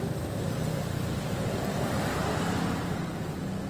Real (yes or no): no